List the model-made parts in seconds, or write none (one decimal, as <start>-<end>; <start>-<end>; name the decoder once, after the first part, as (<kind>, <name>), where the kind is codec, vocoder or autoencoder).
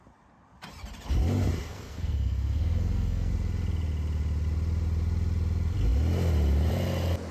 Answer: 1.6-3.3 (codec, SNAC)